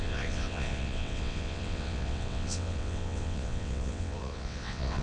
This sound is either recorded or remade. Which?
remade